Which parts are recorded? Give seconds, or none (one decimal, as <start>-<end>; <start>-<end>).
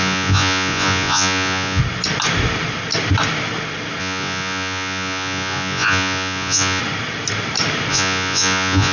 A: 1.8-4.0; 6.8-7.9